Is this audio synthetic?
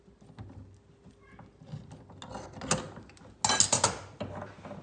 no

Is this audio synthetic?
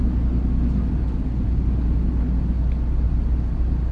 no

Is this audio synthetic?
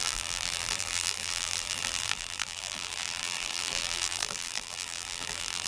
yes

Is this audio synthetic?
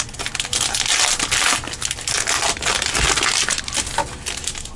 no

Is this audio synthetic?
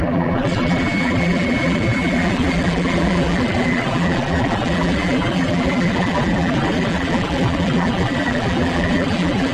yes